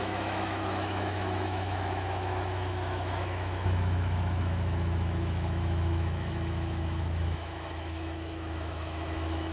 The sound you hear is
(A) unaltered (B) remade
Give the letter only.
B